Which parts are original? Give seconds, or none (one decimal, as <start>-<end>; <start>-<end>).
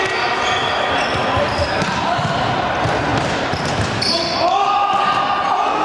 0.0-5.8